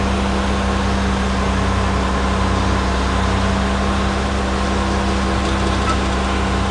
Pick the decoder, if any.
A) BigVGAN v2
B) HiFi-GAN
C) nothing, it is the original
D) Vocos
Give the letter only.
C